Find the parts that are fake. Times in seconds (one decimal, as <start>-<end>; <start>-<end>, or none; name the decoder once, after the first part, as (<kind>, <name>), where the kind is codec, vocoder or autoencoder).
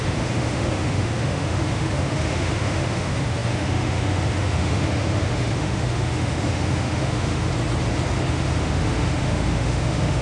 0.0-7.5 (autoencoder, DAC-VAE); 8.3-10.2